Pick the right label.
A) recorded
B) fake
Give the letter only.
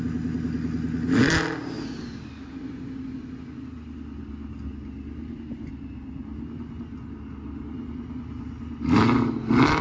A